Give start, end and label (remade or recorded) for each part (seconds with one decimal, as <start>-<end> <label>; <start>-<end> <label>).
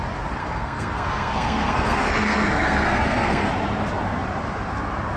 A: 0.0-0.4 recorded; 0.4-3.5 remade; 3.5-5.2 recorded